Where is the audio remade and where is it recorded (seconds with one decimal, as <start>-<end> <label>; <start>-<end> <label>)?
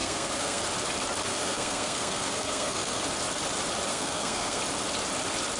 0.0-0.6 remade; 0.6-1.3 recorded; 1.3-3.0 remade; 3.0-3.9 recorded; 3.9-4.6 remade; 4.6-5.6 recorded